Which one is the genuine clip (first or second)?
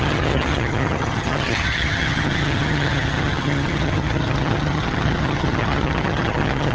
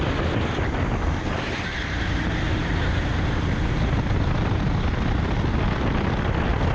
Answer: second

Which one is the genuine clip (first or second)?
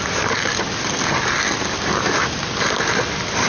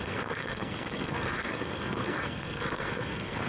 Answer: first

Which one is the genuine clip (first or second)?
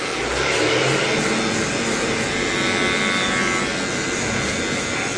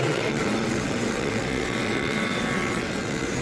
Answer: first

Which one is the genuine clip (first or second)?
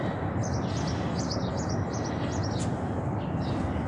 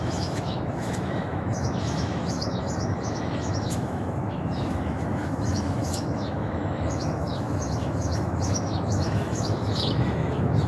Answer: first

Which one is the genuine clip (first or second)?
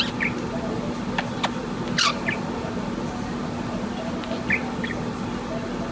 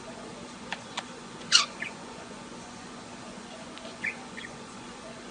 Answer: first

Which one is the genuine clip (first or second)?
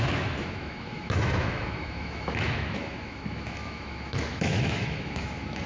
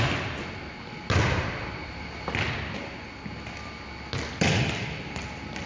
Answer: second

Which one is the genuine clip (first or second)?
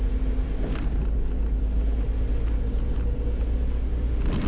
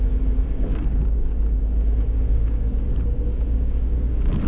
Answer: first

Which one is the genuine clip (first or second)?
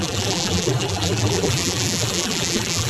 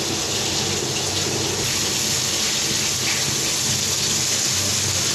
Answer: second